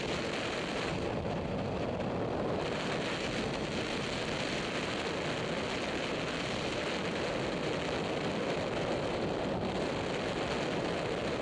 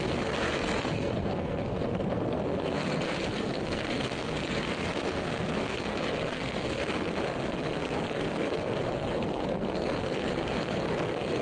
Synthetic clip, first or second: second